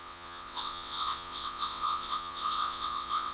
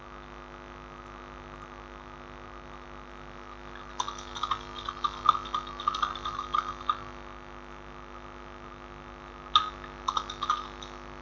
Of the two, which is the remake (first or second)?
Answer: first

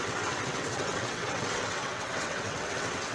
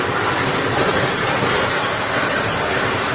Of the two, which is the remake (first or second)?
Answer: first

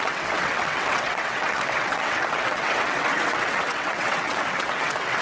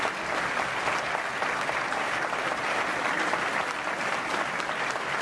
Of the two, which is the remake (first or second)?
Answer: first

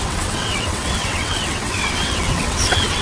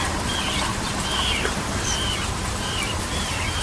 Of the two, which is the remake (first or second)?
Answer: first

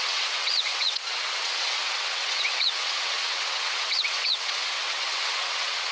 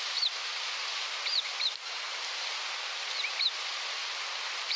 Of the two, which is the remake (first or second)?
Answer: first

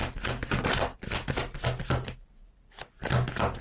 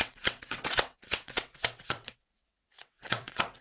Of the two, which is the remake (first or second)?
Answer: second